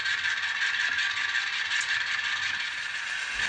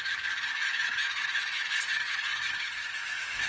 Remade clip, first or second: second